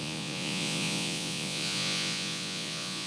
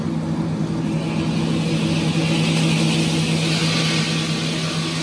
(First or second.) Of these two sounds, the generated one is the first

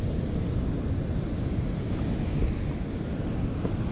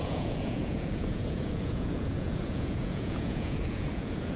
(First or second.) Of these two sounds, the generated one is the second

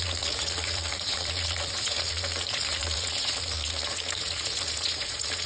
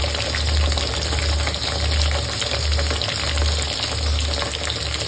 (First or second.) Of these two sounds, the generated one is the first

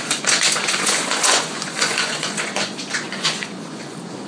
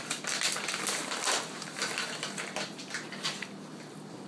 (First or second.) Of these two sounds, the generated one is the first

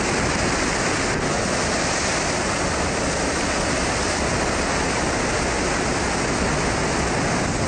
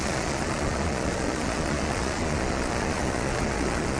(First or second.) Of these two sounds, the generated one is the second